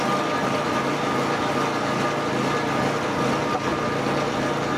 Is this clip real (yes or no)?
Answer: yes